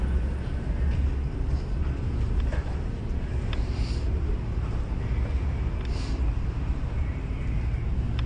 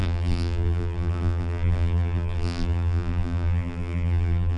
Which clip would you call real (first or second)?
first